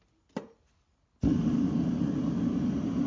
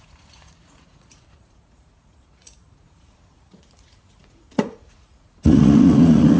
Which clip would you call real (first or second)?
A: first